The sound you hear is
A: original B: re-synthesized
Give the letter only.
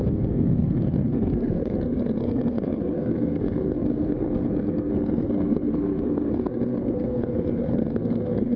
B